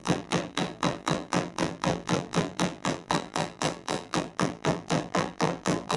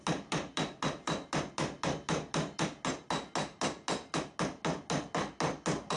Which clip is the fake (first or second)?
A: first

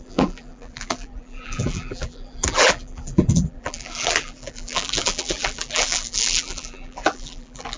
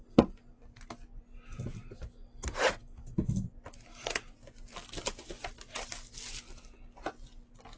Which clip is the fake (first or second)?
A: first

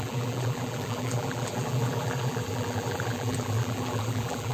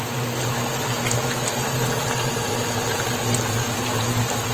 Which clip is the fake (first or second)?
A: first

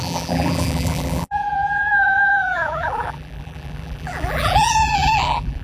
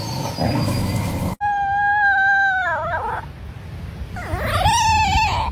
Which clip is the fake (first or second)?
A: first